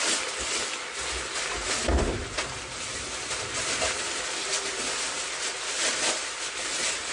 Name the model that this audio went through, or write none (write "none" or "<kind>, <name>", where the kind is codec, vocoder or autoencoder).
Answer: none